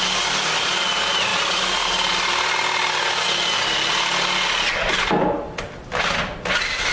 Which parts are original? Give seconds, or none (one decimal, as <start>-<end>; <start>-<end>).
0.0-6.9